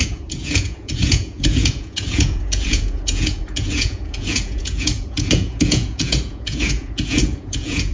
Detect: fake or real fake